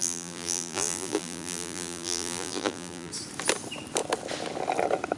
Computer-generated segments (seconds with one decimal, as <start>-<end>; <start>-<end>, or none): 0.0-3.1